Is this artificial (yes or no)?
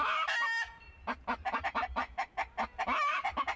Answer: no